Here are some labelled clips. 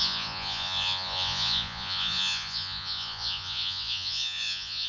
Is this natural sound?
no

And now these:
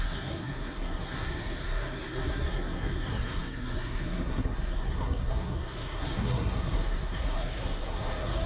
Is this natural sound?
no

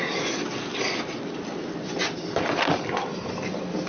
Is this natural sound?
yes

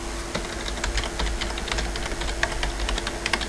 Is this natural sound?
yes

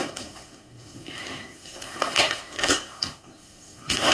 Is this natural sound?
no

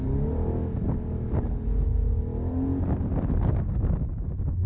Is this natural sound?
yes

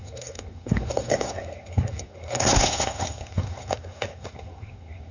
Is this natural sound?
no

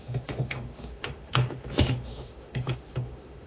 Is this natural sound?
no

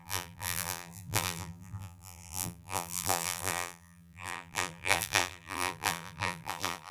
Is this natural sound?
no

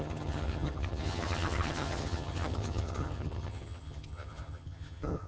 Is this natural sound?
no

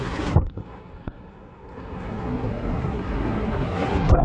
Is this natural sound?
no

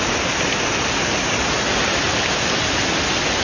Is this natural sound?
yes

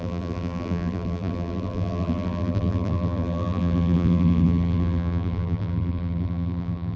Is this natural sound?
no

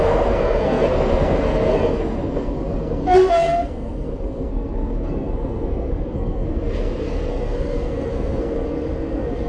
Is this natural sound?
no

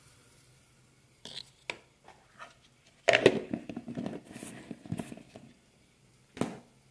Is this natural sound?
yes